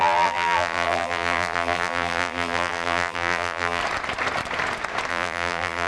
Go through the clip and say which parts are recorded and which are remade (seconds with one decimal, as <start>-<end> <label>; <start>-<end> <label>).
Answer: 0.0-3.8 remade; 3.8-5.1 recorded; 5.1-5.9 remade